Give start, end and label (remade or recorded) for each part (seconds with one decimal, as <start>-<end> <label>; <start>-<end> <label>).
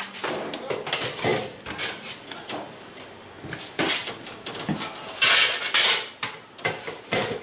0.0-7.4 recorded